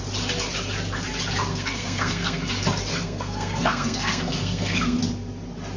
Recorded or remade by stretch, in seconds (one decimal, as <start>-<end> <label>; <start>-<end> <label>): 0.0-1.5 recorded; 1.5-2.5 remade; 2.5-2.9 recorded; 2.9-5.0 remade; 5.0-5.8 recorded